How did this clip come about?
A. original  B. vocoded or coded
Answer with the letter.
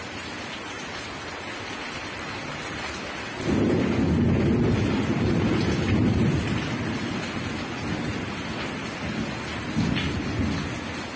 A